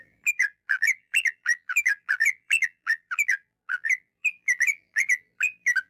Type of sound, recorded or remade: remade